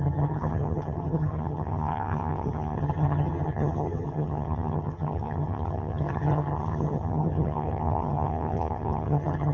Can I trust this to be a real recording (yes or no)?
no